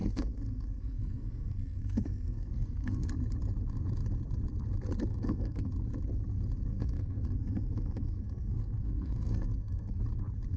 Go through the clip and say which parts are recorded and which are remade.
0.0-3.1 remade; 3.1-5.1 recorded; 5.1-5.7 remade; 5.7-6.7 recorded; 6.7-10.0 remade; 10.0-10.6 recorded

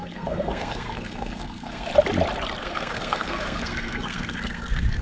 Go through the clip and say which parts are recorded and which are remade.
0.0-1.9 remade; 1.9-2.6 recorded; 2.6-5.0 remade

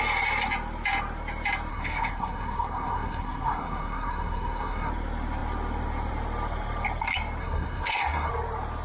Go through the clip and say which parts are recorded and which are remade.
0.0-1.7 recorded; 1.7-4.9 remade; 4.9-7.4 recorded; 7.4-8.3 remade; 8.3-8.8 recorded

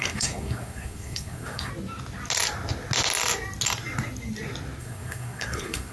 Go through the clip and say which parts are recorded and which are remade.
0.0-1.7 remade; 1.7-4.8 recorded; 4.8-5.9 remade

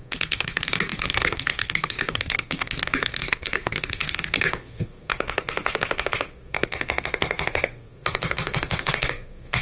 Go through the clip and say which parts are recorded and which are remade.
0.0-9.6 remade

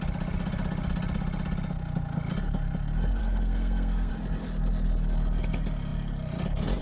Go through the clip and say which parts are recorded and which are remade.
0.0-3.2 recorded; 3.2-4.1 remade; 4.1-6.8 recorded